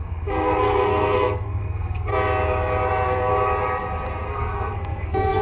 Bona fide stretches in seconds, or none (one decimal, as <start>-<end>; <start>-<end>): 2.1-2.9; 3.3-4.3